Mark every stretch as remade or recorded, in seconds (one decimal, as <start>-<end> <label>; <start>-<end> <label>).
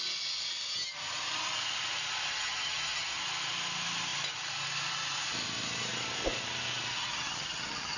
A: 0.0-2.3 recorded; 2.3-3.2 remade; 3.2-6.9 recorded; 6.9-8.0 remade